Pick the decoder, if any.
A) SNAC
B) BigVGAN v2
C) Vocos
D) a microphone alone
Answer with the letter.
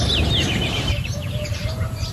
B